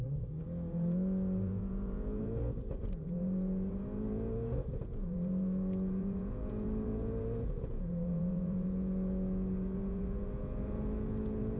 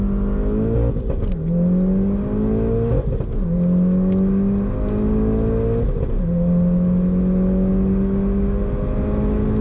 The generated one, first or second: first